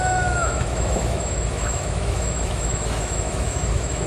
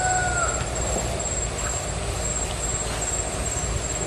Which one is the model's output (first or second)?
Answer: first